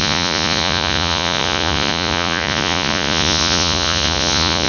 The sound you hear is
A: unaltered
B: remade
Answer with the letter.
B